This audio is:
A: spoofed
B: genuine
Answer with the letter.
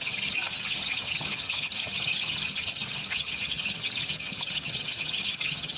A